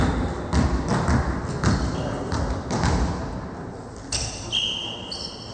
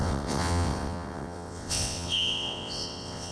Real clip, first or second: first